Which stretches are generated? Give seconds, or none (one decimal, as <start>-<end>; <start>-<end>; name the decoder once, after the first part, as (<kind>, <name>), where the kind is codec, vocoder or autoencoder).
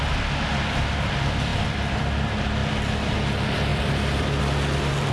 1.5-2.0 (vocoder, BigVGAN v2); 3.7-4.4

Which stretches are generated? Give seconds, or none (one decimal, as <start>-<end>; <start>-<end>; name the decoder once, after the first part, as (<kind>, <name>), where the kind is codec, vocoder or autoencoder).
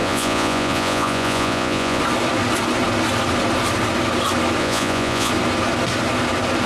0.0-2.0 (vocoder, Vocos); 4.6-5.3